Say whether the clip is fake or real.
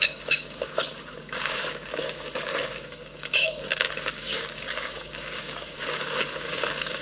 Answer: fake